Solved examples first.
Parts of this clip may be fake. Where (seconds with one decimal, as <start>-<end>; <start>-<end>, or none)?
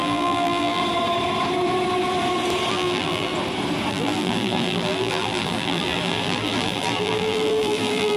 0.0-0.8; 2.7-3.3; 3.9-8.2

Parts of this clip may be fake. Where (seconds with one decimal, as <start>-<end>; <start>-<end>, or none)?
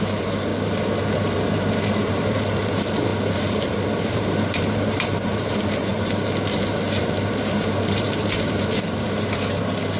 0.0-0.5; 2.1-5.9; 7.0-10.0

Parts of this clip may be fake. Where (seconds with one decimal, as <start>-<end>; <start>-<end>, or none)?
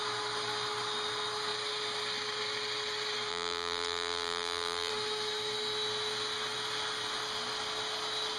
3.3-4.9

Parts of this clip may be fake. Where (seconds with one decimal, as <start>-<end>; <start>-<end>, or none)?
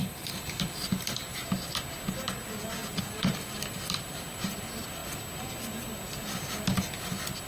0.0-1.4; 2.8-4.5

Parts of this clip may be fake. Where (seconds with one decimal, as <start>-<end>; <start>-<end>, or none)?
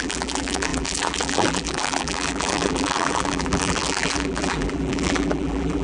0.0-5.8